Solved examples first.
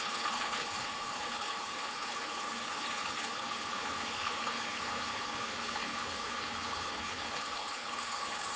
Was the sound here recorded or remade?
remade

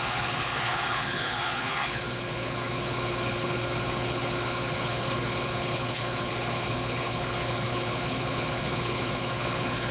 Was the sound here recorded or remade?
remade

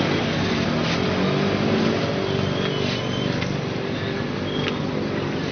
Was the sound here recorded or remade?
recorded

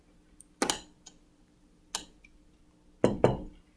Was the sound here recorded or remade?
recorded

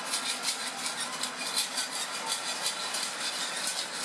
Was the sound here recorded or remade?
recorded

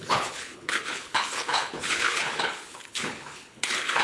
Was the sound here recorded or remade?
remade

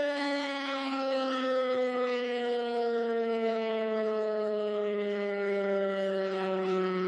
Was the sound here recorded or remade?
remade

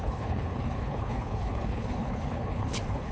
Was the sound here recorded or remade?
remade